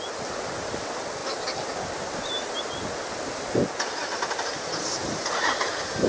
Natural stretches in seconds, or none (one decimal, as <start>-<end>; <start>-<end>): 0.0-6.1

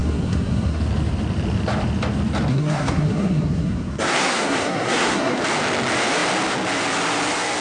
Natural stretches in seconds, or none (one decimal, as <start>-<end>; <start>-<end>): 0.8-2.5; 5.4-7.6